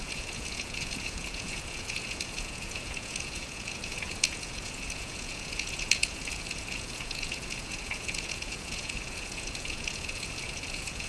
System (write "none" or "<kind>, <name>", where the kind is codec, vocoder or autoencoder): vocoder, Vocos